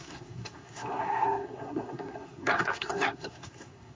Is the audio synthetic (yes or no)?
yes